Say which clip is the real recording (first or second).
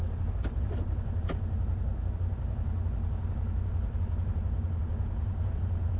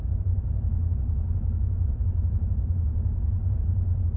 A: first